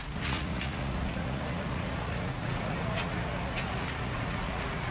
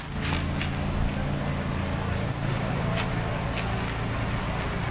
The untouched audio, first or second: second